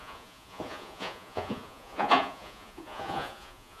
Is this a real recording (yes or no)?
no